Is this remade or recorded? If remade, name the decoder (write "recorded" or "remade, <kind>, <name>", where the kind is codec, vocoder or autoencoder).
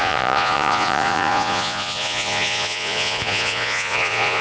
remade, vocoder, Vocos